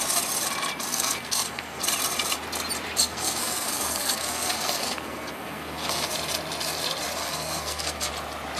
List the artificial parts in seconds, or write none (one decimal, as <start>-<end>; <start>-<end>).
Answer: 0.9-1.8; 3.0-6.1; 7.2-8.1